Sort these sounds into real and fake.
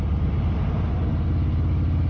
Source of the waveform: real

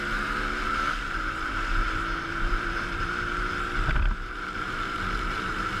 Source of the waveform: fake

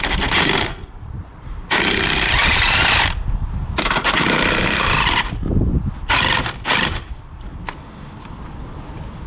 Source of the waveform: fake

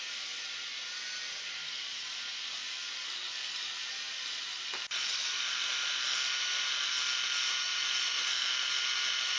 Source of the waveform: real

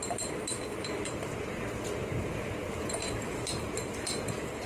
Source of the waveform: fake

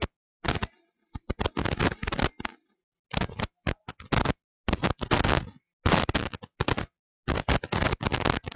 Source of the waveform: real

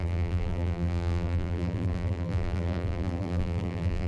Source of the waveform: fake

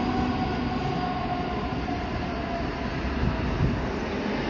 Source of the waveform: real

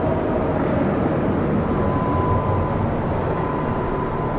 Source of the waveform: fake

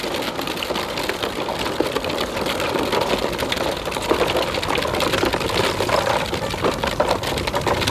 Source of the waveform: real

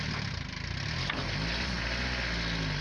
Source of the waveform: real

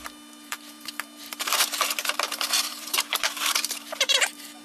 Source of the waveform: fake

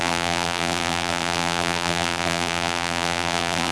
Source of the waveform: fake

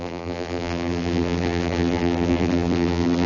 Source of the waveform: fake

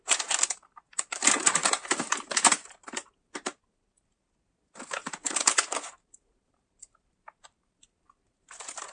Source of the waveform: fake